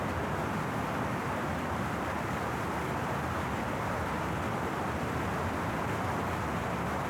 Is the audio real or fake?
real